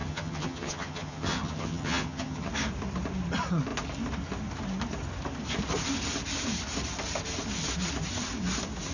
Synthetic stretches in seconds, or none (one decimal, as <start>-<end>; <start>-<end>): 0.0-2.5